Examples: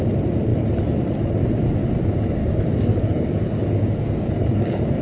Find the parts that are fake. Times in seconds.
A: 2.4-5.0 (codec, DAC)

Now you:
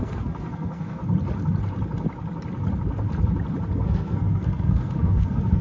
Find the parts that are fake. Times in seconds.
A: 0.0-1.0 (codec, SNAC); 3.7-5.6

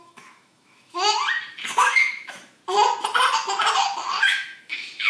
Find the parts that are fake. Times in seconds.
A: 0.0-1.2 (autoencoder, DAC-VAE); 1.8-2.6; 4.2-5.1